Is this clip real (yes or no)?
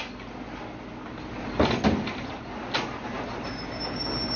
yes